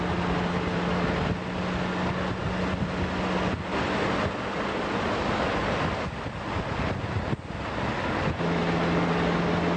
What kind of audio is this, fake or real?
real